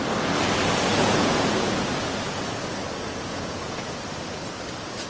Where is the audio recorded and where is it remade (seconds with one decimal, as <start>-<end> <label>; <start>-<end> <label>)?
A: 0.0-0.9 recorded; 0.9-2.5 remade; 2.5-3.1 recorded; 3.1-4.0 remade; 4.0-5.1 recorded